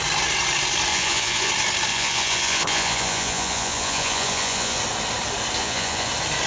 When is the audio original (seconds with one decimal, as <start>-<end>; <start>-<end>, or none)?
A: 0.0-0.9; 1.5-1.9; 4.8-5.6; 6.1-6.5